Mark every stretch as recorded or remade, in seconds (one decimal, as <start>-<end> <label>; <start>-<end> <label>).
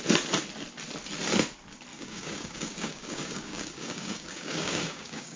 0.0-1.9 recorded; 1.9-5.4 remade